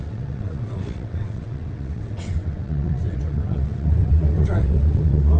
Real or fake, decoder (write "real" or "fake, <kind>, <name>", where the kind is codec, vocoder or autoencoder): fake, vocoder, WaveNeXt